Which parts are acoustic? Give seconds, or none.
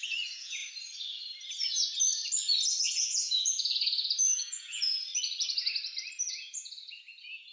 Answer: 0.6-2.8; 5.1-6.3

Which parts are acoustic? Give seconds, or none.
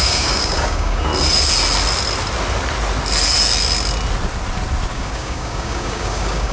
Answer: 1.1-4.9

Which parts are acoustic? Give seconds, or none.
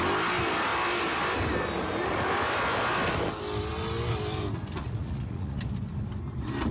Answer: 0.0-4.8; 5.6-6.7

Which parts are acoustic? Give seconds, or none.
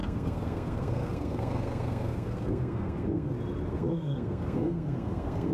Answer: 3.3-3.7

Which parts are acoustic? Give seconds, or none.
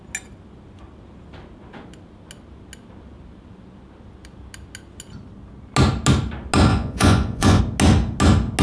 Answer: 0.0-6.7; 7.6-8.6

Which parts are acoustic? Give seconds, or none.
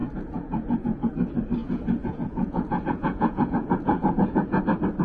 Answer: 1.1-1.6; 4.6-5.0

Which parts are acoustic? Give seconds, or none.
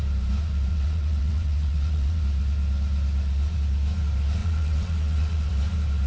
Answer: 0.0-0.7; 2.2-4.4; 5.5-6.1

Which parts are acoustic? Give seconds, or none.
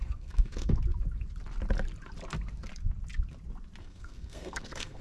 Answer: 0.8-3.8